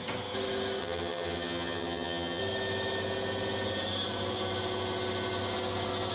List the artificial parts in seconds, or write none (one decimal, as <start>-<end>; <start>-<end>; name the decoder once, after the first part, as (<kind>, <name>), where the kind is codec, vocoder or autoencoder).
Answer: 0.8-2.4 (vocoder, HiFi-GAN)